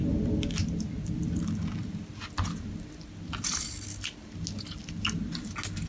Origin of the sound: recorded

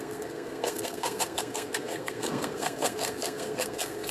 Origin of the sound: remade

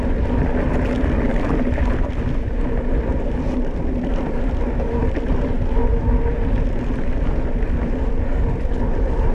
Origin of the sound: recorded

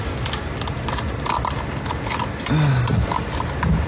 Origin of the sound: recorded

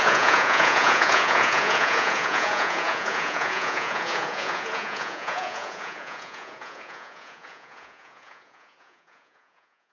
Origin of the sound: remade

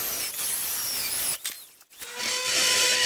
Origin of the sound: recorded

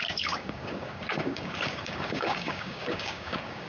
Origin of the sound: remade